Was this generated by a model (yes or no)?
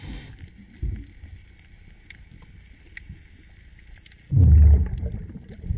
no